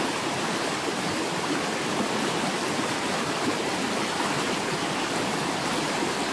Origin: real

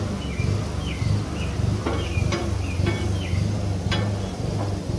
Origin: real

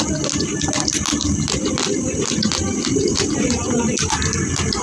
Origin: real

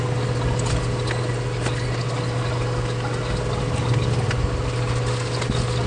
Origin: real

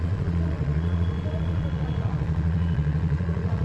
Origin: fake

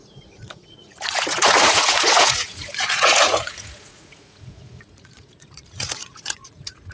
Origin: fake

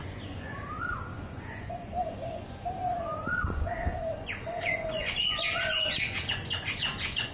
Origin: fake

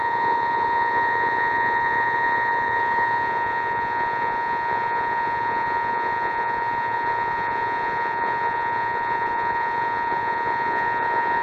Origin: fake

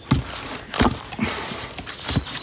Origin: real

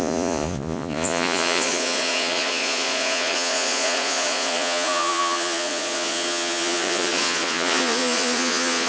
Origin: fake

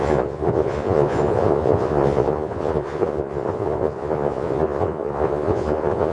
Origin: fake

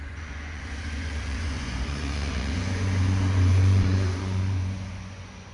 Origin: fake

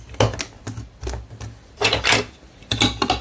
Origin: real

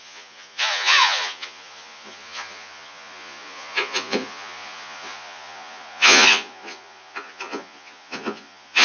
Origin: fake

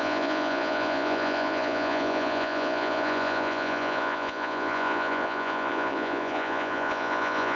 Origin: fake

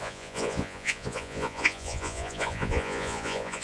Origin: fake